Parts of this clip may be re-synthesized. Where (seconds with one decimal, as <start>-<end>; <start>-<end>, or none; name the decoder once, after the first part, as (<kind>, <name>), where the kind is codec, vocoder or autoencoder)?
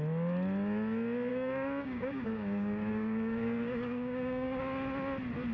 1.3-4.6 (codec, DAC)